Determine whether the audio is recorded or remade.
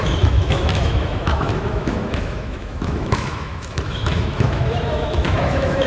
remade